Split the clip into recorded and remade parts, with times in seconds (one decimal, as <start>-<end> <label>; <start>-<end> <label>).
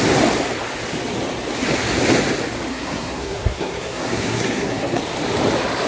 0.0-2.7 recorded; 2.7-5.0 remade; 5.0-5.9 recorded